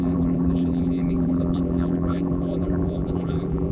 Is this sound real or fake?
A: fake